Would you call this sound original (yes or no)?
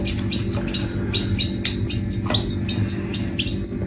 yes